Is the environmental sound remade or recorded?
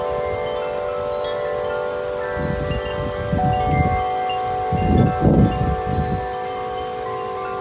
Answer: recorded